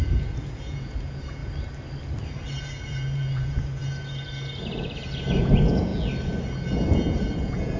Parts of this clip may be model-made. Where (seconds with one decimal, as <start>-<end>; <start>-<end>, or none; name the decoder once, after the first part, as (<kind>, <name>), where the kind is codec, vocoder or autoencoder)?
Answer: 0.0-1.4 (vocoder, Vocos); 2.6-3.8; 5.4-5.9; 7.1-7.8